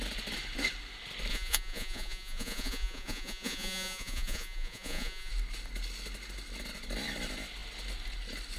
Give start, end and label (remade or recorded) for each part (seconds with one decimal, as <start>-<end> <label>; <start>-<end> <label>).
0.0-1.3 recorded; 1.3-5.3 remade; 5.3-8.6 recorded